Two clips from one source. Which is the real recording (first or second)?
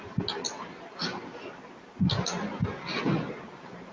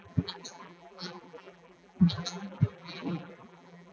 first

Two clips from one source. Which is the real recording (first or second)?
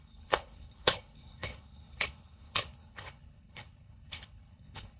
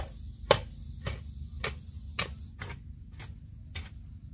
second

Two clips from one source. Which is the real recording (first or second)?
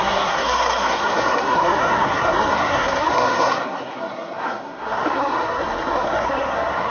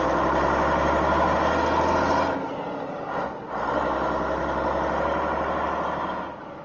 second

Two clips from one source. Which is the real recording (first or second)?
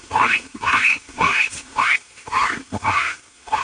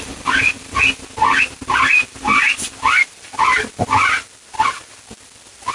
second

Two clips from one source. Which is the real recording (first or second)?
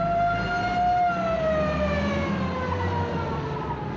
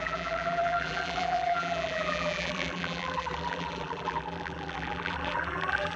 first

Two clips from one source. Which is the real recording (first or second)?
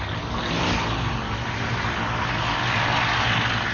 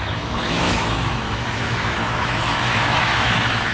first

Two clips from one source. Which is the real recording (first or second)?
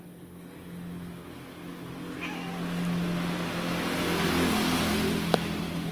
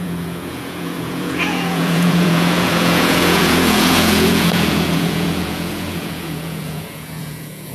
first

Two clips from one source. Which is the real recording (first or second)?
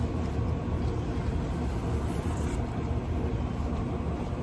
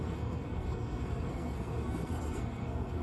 first